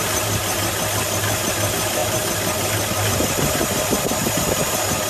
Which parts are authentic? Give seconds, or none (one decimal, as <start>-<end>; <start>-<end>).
0.0-5.1